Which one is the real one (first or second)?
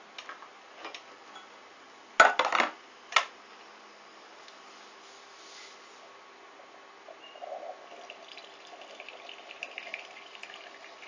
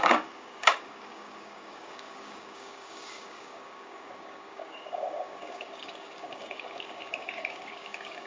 first